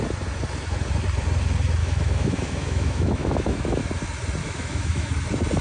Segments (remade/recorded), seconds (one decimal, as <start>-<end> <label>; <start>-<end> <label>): 0.0-1.8 recorded; 1.8-3.8 remade; 3.8-4.4 recorded; 4.4-5.1 remade; 5.1-5.6 recorded